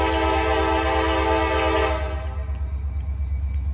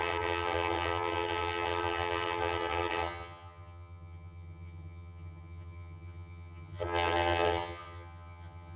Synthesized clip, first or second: second